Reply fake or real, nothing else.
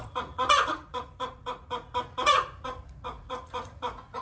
fake